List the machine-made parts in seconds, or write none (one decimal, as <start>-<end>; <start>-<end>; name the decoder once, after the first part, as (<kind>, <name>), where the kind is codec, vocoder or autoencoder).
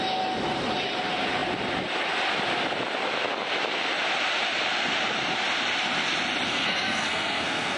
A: 6.5-7.8 (codec, SNAC)